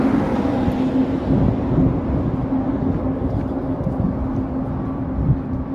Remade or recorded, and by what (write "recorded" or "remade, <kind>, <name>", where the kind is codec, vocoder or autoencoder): recorded